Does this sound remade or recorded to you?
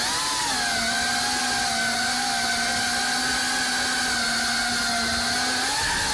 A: recorded